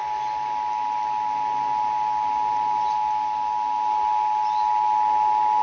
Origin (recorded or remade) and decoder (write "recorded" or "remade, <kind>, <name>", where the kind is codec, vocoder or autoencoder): recorded